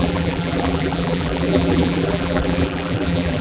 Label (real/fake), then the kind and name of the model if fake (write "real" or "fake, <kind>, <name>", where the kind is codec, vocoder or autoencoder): fake, vocoder, BigVGAN v2